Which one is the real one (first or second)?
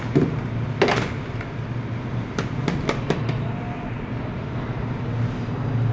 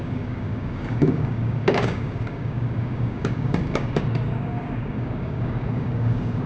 first